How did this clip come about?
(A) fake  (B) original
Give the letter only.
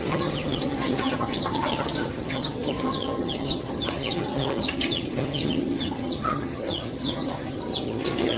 A